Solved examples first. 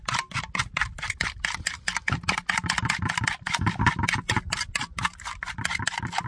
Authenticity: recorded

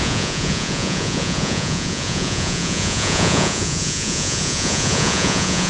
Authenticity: remade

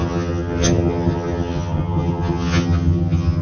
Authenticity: remade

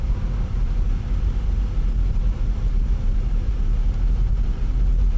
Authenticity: remade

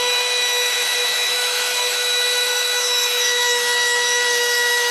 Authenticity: remade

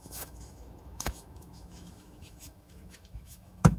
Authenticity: remade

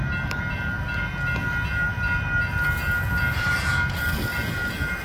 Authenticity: recorded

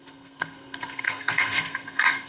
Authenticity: remade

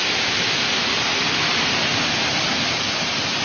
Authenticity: recorded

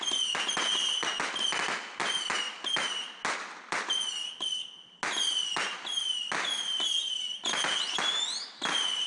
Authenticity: recorded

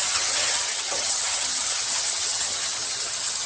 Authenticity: remade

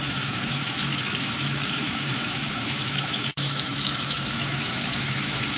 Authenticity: remade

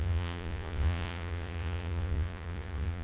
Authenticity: remade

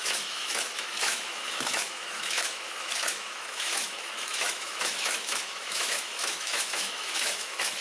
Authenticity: remade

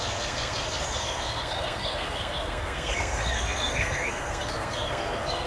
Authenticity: remade